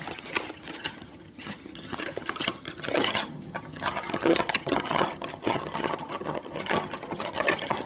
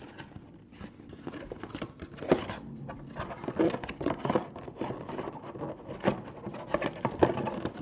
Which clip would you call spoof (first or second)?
first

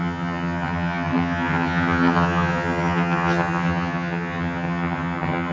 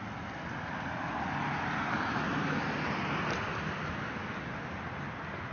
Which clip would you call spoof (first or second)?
first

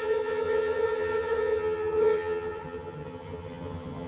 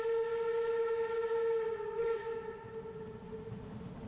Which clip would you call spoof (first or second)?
first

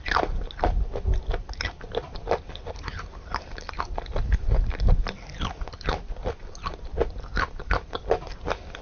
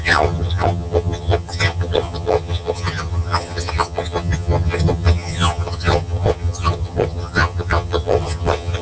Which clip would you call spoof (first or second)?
second